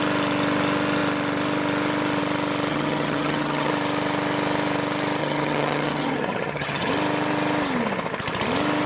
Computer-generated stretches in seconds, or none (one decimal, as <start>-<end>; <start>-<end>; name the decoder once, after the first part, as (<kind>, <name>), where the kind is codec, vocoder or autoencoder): 2.7-3.7 (vocoder, HiFi-GAN); 5.2-6.9